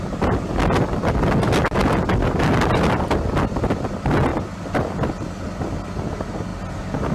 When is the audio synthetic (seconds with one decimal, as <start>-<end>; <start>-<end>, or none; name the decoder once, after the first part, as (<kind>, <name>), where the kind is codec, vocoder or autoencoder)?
4.3-4.8 (vocoder, BigVGAN v2)